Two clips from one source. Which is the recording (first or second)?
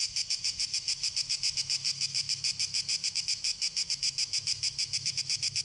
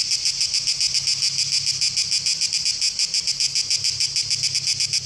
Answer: second